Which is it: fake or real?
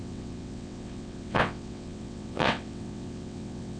fake